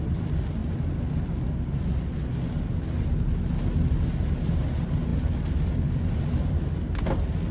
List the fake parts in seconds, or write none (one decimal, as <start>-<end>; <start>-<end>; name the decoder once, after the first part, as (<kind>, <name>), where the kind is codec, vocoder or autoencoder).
none